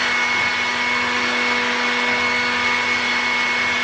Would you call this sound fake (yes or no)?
no